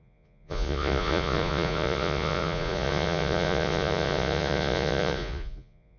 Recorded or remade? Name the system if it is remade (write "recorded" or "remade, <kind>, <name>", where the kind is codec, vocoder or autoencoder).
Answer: remade, vocoder, Vocos